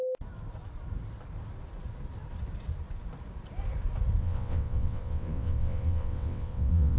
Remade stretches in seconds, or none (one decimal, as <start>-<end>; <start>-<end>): 4.2-7.0